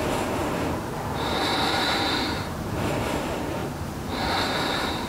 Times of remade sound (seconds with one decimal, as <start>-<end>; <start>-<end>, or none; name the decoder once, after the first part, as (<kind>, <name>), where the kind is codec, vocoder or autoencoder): 0.4-2.9 (vocoder, BigVGAN v2); 3.6-4.2